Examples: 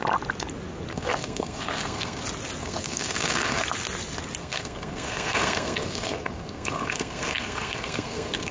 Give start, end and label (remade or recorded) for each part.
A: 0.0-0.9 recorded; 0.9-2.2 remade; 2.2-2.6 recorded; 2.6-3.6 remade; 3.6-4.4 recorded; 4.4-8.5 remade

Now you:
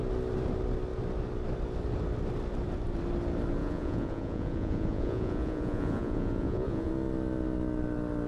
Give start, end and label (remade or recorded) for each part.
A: 0.0-3.6 recorded; 3.6-6.9 remade; 6.9-8.3 recorded

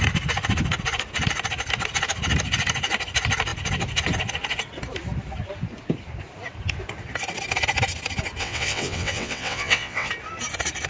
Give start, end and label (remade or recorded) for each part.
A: 0.0-8.4 recorded; 8.4-10.1 remade; 10.1-10.9 recorded

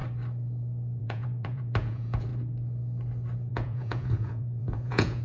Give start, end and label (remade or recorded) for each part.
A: 0.0-1.0 recorded; 1.0-2.3 remade; 2.3-3.5 recorded; 3.5-5.2 remade